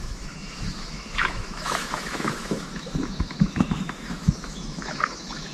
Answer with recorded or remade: remade